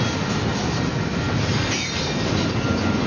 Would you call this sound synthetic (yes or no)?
no